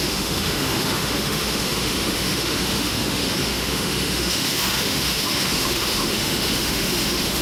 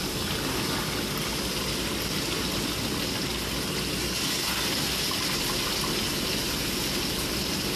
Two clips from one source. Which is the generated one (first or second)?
first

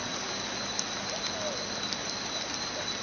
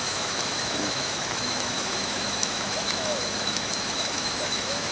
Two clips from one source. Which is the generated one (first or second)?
second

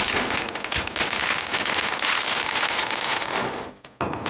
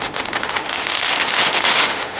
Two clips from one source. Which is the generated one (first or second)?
second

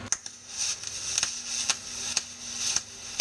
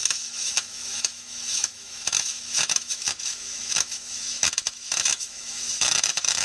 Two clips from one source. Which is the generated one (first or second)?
second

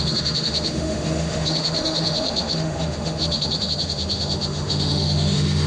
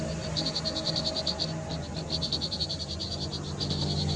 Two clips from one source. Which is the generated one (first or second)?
first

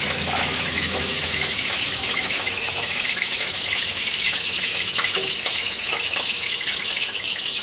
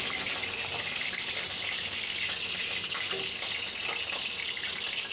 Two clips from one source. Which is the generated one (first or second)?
first